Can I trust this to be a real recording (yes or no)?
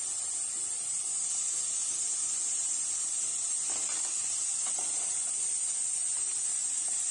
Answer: yes